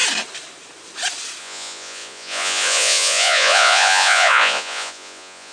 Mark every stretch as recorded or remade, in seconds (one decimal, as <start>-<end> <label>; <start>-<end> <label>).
0.0-1.4 recorded; 1.4-5.5 remade